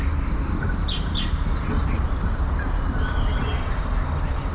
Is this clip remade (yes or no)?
no